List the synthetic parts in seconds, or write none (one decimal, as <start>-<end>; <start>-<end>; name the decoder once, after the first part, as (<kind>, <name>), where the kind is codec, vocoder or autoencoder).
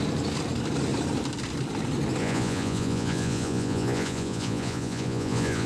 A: 2.2-5.7 (vocoder, Vocos)